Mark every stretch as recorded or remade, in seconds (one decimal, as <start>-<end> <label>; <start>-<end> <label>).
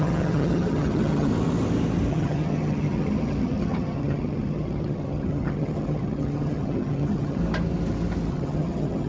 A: 0.0-1.3 remade; 1.3-2.1 recorded; 2.1-7.4 remade; 7.4-8.3 recorded; 8.3-9.1 remade